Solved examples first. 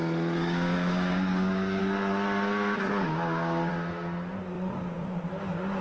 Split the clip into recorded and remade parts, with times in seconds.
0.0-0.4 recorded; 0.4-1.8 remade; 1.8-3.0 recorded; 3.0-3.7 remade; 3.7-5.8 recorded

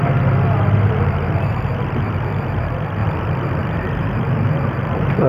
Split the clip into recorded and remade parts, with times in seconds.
0.0-0.9 recorded; 0.9-5.3 remade